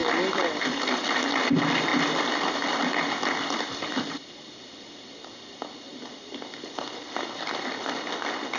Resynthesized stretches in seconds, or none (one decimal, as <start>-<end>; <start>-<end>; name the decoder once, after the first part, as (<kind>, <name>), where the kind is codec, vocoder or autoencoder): 0.0-0.7 (vocoder, BigVGAN v2); 1.9-5.5; 5.9-7.6